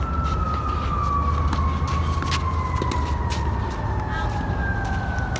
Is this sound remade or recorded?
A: recorded